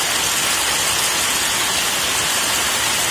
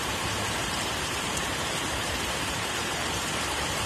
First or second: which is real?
first